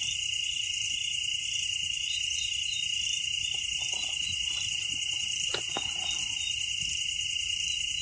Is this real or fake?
real